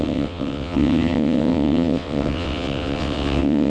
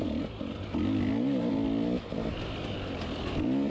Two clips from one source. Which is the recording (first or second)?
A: second